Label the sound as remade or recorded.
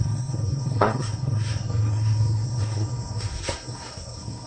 remade